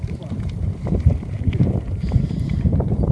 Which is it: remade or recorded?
remade